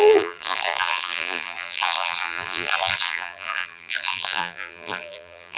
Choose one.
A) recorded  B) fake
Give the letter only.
B